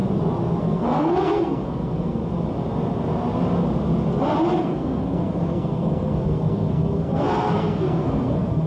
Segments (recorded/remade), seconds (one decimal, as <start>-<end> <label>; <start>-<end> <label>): 0.0-0.6 recorded; 0.6-2.2 remade; 2.2-4.6 recorded; 4.6-8.7 remade